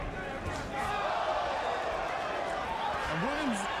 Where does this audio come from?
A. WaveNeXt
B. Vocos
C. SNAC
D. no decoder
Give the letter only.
D